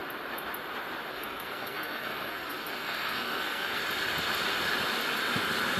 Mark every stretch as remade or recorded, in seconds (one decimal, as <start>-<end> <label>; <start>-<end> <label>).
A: 0.0-1.1 recorded; 1.1-3.8 remade; 3.8-5.8 recorded